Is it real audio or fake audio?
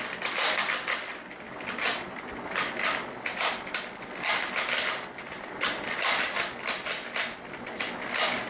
real